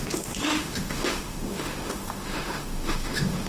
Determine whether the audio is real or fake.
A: fake